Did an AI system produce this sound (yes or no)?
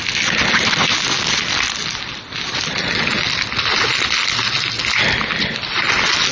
no